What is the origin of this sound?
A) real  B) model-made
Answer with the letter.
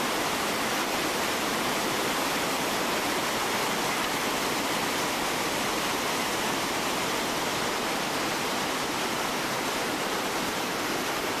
B